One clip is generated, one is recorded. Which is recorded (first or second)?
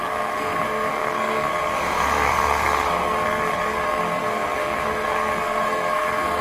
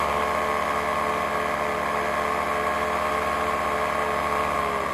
second